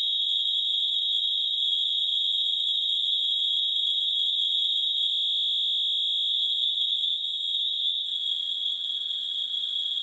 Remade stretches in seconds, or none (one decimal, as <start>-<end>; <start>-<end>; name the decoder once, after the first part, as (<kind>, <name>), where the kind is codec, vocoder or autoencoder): 0.0-5.1 (vocoder, HiFi-GAN); 6.3-10.0